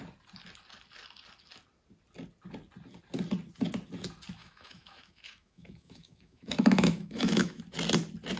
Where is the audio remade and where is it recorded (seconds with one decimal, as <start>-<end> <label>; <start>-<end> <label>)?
0.0-4.4 recorded; 4.4-7.6 remade; 7.6-8.4 recorded